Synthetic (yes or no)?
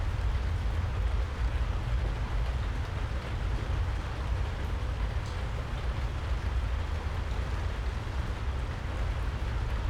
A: no